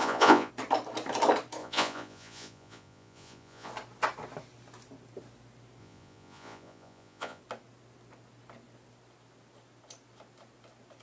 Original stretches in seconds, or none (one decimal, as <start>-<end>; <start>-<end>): 0.5-1.6; 3.7-5.8; 7.4-11.0

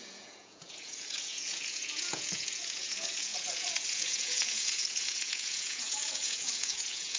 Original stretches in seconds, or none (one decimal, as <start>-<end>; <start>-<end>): none

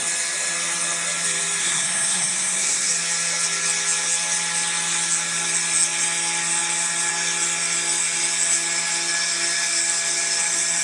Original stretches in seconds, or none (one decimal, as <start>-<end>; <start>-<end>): 0.0-1.6; 2.9-10.8

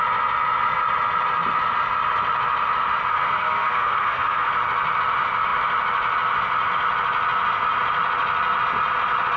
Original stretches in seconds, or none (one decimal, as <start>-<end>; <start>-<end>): 0.0-3.1; 4.5-9.4

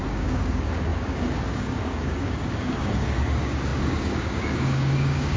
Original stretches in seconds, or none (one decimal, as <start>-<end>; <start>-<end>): none

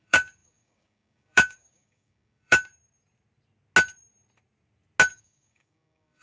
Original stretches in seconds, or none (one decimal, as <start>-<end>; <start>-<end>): 2.7-5.1